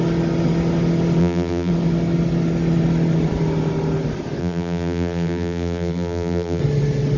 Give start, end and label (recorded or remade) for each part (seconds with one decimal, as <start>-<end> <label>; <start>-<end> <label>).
0.0-1.2 recorded; 1.2-1.7 remade; 1.7-4.4 recorded; 4.4-6.6 remade; 6.6-7.2 recorded